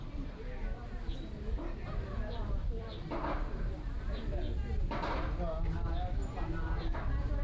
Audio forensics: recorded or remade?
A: recorded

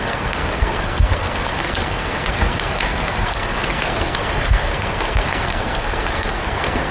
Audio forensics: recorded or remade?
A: remade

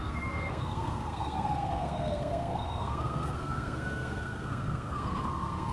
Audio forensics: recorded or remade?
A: remade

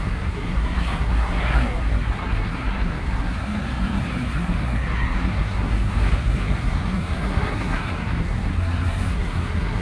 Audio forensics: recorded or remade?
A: remade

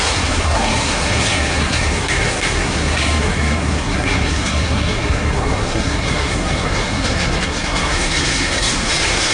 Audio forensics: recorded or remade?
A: remade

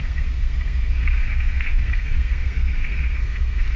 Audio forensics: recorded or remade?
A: remade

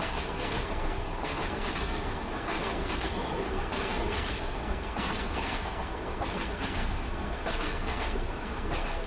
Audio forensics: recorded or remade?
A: remade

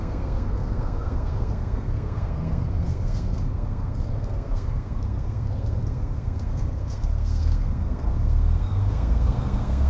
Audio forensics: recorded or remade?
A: remade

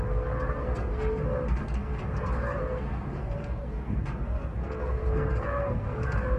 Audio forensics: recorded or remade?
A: remade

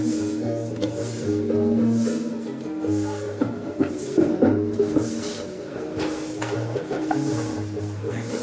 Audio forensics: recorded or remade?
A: remade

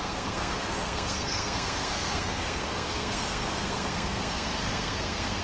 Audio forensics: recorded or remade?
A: remade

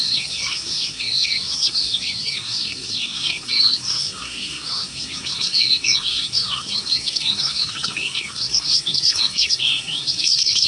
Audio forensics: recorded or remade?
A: remade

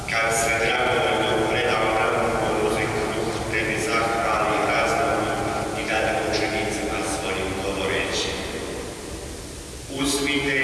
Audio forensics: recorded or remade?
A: recorded